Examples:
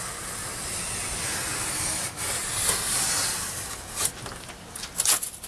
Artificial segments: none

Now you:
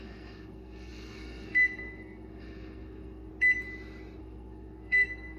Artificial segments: 0.0-3.3; 4.2-5.4